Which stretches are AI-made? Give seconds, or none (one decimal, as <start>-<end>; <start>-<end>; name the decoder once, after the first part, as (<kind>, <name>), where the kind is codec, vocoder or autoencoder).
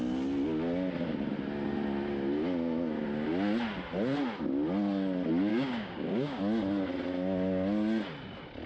5.5-6.4 (codec, DAC)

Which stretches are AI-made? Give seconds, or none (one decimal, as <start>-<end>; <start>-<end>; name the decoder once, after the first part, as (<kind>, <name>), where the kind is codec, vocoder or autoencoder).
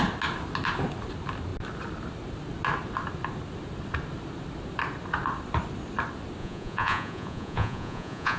6.4-8.4 (vocoder, Vocos)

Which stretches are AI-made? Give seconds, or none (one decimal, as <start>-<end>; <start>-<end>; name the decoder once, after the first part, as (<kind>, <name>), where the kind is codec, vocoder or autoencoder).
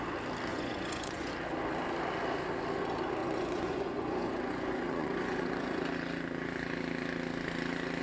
0.5-1.3 (vocoder, Vocos); 3.2-5.8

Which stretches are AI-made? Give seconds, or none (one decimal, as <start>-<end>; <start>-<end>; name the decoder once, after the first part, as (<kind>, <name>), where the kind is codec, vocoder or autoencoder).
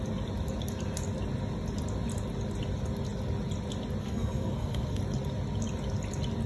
4.0-5.0 (codec, SNAC)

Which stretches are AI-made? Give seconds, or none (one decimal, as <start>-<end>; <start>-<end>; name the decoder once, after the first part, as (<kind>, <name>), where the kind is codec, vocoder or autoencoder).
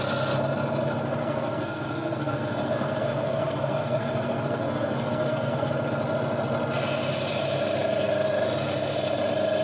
1.2-5.7 (codec, SNAC)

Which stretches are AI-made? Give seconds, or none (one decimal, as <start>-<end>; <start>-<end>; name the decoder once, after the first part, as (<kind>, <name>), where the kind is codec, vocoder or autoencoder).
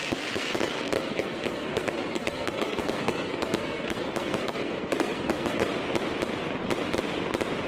0.0-5.7 (codec, SNAC)